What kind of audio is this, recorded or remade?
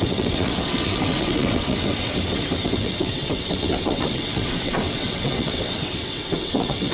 remade